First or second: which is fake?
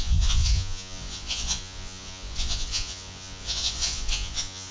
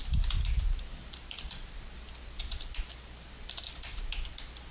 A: first